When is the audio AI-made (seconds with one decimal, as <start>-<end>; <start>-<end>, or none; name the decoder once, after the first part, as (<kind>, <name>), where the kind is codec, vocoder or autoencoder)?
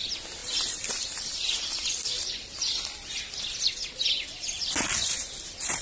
0.4-2.5 (vocoder, BigVGAN v2)